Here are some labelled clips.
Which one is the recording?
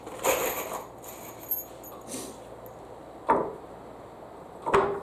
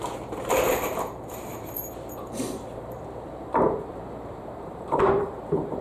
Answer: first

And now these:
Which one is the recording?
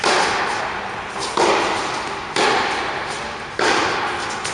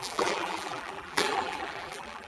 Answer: first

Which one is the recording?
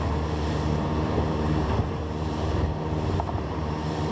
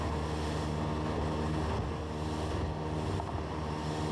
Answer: second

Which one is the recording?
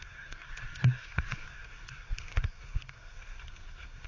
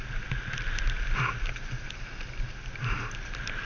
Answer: second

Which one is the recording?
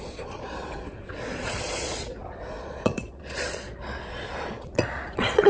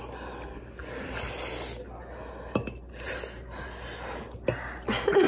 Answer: second